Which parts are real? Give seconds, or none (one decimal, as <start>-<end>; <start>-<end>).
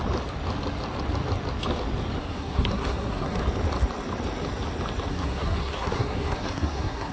0.0-2.2; 3.4-5.1